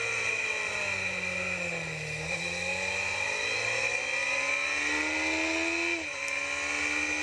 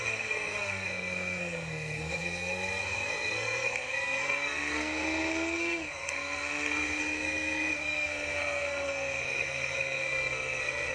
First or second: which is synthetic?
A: second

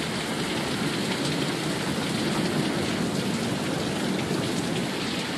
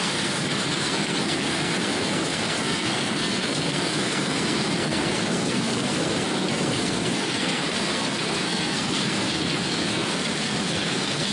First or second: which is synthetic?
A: second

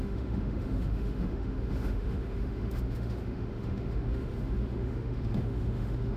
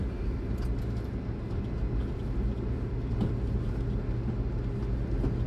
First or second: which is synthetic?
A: first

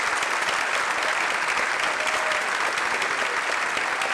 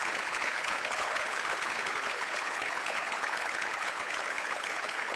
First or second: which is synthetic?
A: second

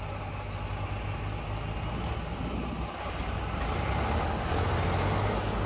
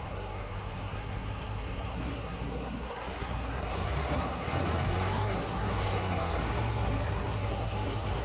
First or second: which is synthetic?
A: second